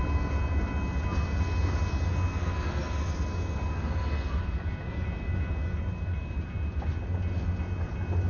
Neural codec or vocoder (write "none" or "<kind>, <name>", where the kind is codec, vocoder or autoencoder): none